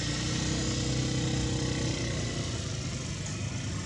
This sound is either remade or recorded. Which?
recorded